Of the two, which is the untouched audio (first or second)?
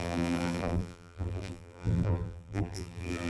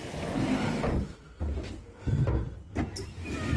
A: second